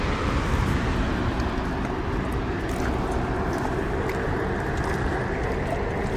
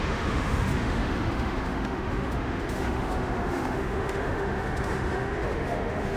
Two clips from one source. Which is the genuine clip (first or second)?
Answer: first